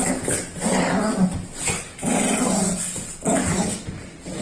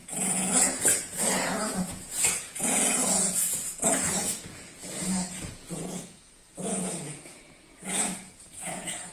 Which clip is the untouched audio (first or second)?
first